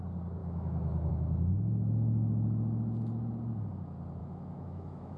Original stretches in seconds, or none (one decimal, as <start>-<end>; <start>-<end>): 0.0-0.4; 1.1-4.2